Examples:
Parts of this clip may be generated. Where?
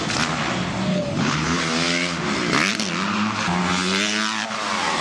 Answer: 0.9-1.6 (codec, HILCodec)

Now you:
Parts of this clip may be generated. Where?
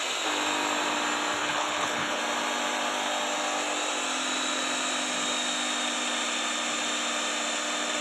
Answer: 1.4-2.2 (codec, HILCodec)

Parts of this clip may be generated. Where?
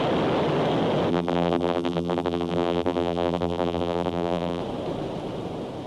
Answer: 1.1-4.6 (vocoder, BigVGAN v2)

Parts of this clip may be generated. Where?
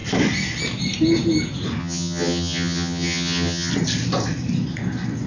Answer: 1.8-3.7 (vocoder, HiFi-GAN)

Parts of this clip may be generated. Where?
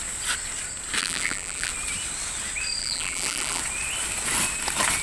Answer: 1.0-1.7 (vocoder, BigVGAN v2); 2.8-3.6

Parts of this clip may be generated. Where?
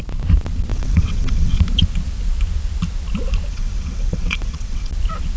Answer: 0.7-1.6 (vocoder, WaveNeXt); 3.5-4.9